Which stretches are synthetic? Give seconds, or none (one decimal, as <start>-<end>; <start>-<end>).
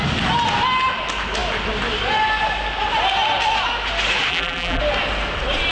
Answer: 4.3-4.8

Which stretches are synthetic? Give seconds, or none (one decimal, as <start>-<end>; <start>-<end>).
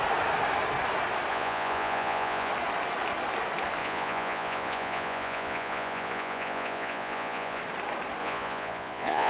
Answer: 1.3-2.5; 3.8-7.6; 8.2-9.3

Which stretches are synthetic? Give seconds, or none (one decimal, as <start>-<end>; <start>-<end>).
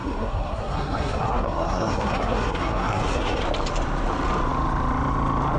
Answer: 0.0-3.4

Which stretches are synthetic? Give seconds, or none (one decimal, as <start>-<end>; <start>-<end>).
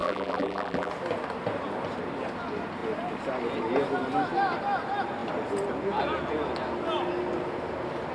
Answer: 0.0-0.9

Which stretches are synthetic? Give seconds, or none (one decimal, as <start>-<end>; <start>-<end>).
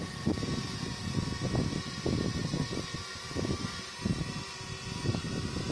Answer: none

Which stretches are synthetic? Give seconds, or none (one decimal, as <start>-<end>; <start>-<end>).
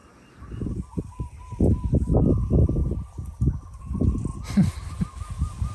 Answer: 2.8-3.8; 4.3-5.1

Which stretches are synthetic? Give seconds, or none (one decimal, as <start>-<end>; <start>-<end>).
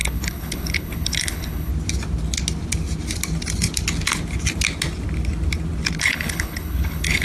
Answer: 0.0-1.7; 6.0-7.2